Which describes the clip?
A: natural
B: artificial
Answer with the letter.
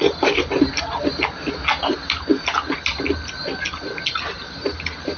A